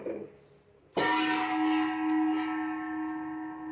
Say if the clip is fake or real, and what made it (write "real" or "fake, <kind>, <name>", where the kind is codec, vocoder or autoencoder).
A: real